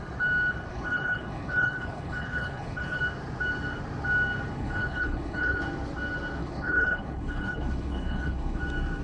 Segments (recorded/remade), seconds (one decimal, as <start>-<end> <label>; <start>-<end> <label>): 0.0-0.7 recorded; 0.7-3.0 remade; 3.0-4.5 recorded; 4.5-5.6 remade; 5.6-6.4 recorded; 6.4-8.6 remade; 8.6-9.0 recorded

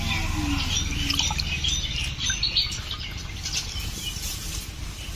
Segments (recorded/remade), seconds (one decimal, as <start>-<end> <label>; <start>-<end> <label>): 0.0-5.2 recorded

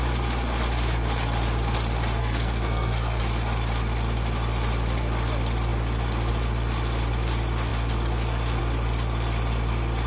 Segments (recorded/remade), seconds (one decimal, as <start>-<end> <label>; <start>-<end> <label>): 0.0-2.2 recorded; 2.2-3.2 remade; 3.2-10.1 recorded

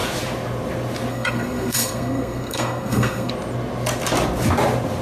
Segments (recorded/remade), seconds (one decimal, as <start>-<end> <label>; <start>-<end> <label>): 0.0-1.1 recorded; 1.1-3.3 remade; 3.3-5.0 recorded